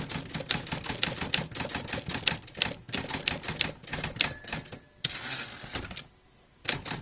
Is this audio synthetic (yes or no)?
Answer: no